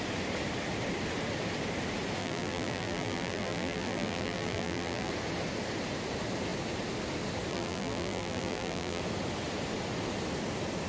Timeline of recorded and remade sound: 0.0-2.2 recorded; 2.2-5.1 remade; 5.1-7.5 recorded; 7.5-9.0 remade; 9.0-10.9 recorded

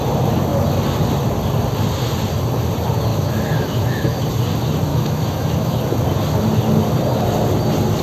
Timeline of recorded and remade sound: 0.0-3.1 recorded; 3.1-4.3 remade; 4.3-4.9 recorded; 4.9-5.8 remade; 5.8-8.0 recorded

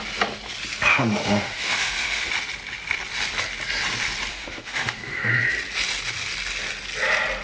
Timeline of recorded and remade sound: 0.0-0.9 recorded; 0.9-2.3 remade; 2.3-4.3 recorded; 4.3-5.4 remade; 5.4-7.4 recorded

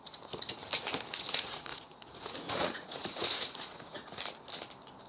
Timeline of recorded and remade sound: 0.0-1.1 recorded; 1.1-4.2 remade; 4.2-5.1 recorded

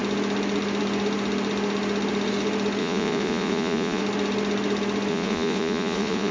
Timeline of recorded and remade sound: 0.0-2.8 recorded; 2.8-4.0 remade; 4.0-5.1 recorded; 5.1-6.3 remade

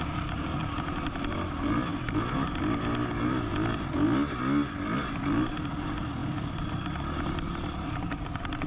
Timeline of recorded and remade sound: 0.0-0.6 recorded; 0.6-1.3 remade; 1.3-6.2 recorded; 6.2-8.7 remade